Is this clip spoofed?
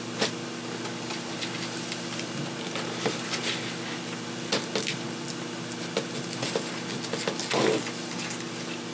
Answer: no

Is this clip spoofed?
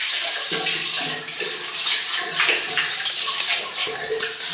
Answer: no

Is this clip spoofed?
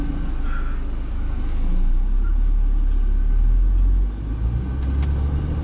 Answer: no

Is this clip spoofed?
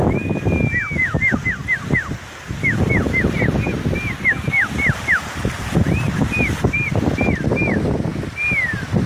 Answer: no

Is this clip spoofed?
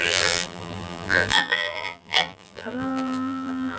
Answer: yes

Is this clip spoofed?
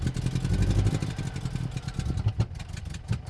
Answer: no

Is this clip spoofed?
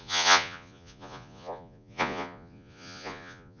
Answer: yes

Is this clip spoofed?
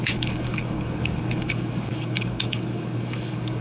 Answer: yes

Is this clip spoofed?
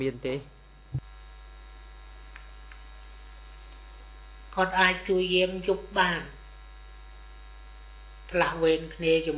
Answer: no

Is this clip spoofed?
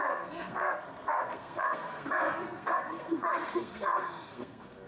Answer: yes